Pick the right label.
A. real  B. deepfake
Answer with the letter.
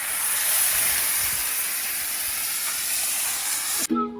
A